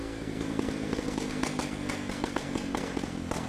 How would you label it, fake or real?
fake